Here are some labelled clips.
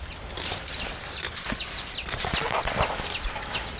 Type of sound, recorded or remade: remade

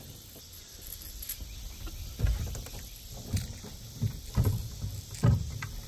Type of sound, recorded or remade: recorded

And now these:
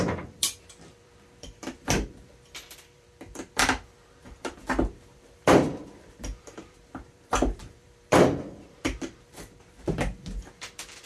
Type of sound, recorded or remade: remade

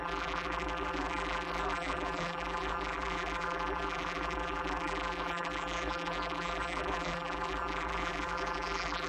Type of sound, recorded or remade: remade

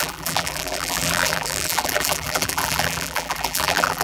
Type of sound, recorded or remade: remade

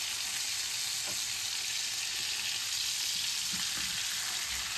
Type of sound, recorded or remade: recorded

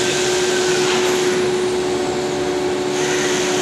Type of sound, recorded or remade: recorded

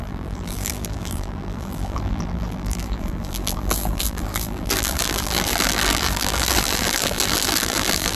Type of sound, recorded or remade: remade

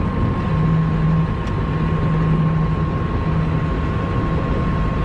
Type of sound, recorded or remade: recorded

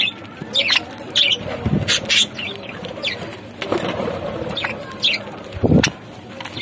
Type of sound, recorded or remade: recorded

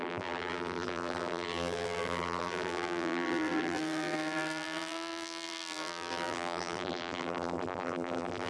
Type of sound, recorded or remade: remade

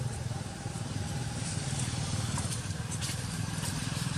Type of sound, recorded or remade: remade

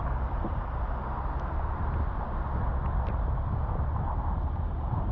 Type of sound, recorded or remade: recorded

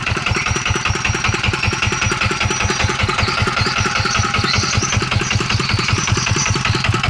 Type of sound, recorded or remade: remade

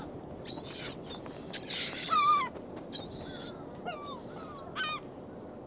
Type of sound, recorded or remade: recorded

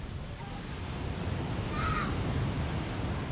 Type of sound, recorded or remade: recorded